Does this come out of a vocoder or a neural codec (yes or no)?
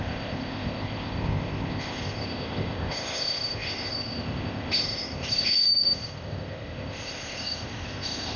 yes